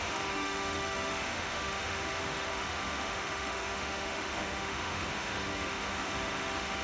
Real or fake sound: fake